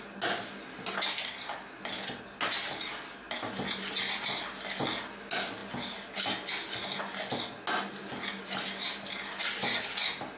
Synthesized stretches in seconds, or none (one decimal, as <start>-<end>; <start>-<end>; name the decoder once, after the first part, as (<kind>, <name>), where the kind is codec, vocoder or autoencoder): none